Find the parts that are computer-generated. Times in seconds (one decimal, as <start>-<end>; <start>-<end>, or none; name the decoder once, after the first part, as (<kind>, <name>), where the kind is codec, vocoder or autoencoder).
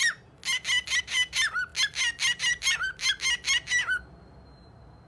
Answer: 0.0-0.4 (vocoder, BigVGAN v2); 1.0-1.7; 2.4-3.0